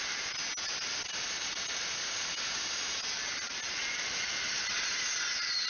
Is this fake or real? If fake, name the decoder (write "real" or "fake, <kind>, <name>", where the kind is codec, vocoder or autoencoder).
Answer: real